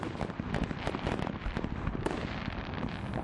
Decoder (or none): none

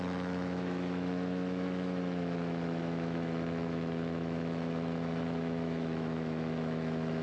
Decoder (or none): autoencoder, DAC-VAE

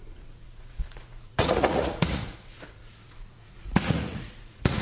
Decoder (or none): vocoder, Vocos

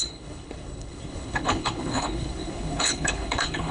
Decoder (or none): codec, HILCodec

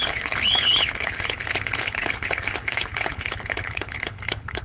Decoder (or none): codec, HILCodec